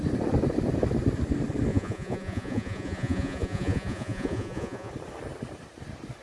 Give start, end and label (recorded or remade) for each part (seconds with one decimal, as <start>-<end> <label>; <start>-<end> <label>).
0.0-1.7 recorded; 1.7-4.9 remade; 4.9-6.2 recorded